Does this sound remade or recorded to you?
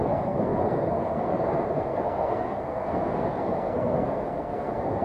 remade